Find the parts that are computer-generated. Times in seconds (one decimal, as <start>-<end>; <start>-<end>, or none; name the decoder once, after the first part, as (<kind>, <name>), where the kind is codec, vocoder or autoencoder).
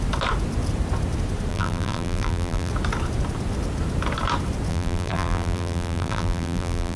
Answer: 1.5-2.7 (vocoder, BigVGAN v2); 4.7-7.0